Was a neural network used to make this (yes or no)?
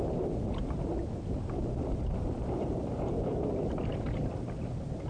no